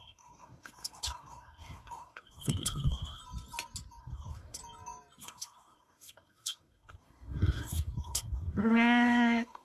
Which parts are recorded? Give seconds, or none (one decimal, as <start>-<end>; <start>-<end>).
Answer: 3.2-4.0; 4.6-5.2